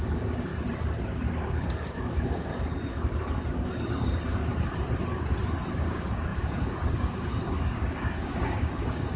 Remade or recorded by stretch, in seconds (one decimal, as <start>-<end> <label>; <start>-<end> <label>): 0.0-0.5 remade; 0.5-1.6 recorded; 1.6-2.5 remade; 2.5-3.5 recorded; 3.5-4.4 remade; 4.4-5.7 recorded; 5.7-9.2 remade